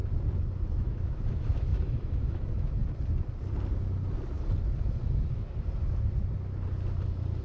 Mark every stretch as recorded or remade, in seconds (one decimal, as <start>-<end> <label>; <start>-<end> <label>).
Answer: 0.0-0.7 recorded; 0.7-2.8 remade; 2.8-7.4 recorded